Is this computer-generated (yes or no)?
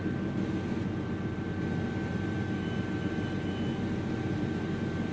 no